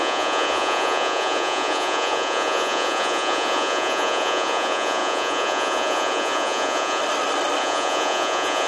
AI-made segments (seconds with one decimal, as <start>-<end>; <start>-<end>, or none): 0.0-7.0; 7.6-8.7